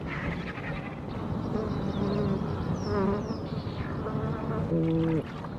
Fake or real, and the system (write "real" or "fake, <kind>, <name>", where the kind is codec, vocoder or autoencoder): real